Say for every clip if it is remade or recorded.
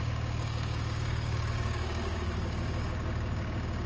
remade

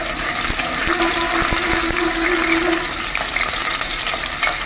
recorded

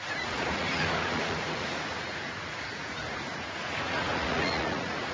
remade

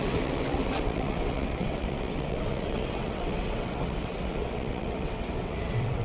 remade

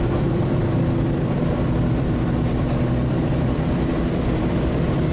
remade